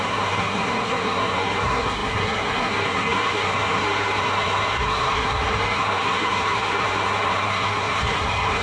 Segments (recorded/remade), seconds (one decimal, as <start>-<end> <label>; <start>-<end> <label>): 0.0-8.6 remade